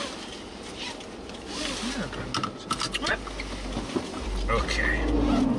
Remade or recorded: recorded